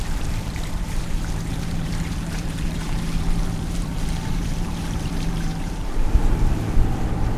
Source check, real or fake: fake